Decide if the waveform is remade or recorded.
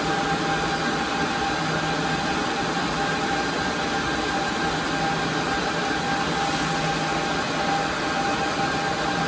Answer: recorded